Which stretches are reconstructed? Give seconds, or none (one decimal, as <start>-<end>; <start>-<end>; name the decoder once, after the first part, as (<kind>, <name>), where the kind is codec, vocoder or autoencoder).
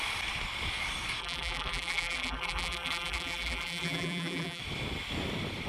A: 1.2-4.6 (vocoder, BigVGAN v2)